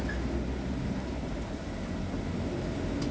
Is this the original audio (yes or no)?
yes